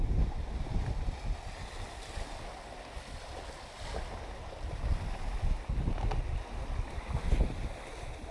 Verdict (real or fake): real